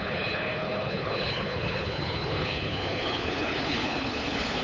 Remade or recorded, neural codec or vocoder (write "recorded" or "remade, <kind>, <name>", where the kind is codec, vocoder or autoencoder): remade, codec, HILCodec